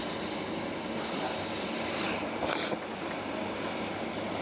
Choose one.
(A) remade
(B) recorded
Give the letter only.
B